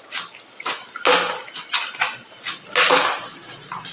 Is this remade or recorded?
recorded